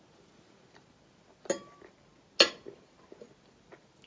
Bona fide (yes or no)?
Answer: yes